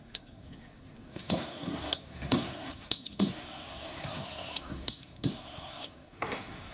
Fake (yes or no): yes